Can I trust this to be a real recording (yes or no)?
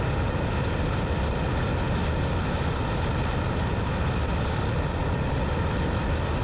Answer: yes